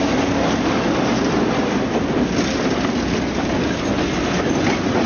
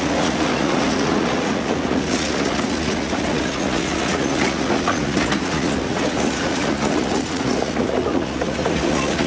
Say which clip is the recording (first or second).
first